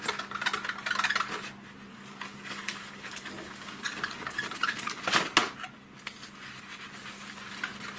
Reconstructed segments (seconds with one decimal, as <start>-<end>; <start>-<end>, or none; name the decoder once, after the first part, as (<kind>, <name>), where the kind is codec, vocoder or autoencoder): 1.9-5.0 (codec, DAC)